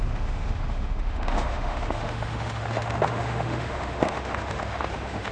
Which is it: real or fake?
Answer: fake